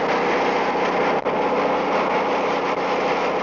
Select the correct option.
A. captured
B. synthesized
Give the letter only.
A